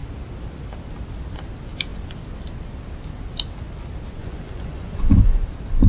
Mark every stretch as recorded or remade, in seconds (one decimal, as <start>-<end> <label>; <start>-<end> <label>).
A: 0.0-4.2 recorded; 4.2-5.4 remade; 5.4-5.9 recorded